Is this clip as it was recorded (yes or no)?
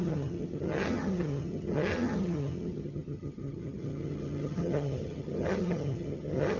no